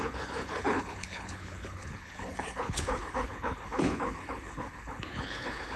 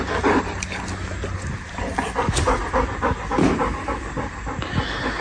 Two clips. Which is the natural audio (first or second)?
second